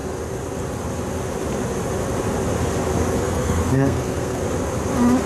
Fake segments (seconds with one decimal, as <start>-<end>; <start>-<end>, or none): 3.2-4.4